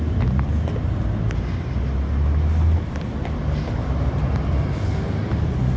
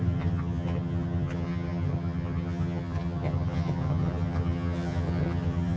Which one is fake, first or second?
second